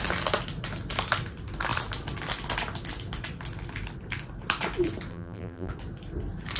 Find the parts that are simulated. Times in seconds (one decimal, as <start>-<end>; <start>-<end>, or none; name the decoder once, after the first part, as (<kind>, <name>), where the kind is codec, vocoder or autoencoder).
5.1-5.7 (vocoder, BigVGAN v2)